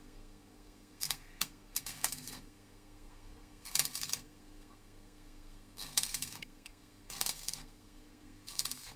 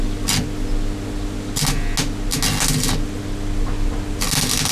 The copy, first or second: first